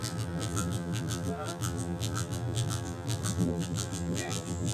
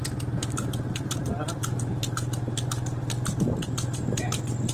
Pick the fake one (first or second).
first